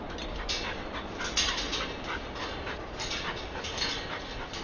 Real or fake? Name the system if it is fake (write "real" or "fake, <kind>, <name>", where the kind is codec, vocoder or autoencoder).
real